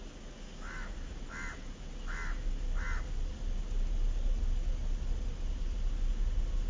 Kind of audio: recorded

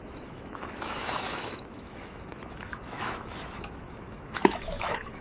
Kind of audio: remade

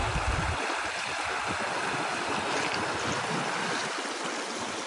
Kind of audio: recorded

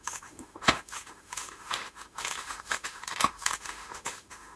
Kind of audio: remade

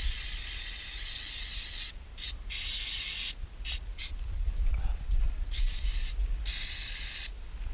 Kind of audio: recorded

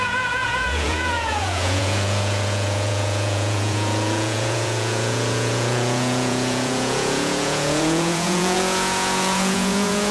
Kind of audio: remade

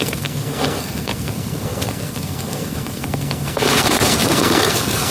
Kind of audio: remade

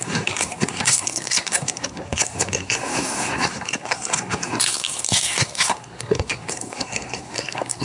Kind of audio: remade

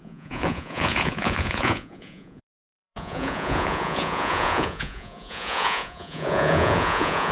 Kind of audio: remade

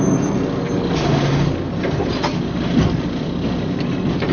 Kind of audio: recorded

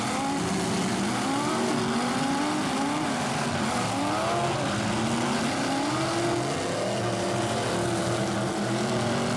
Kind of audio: recorded